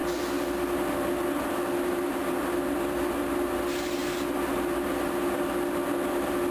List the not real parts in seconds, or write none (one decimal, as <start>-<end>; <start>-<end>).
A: none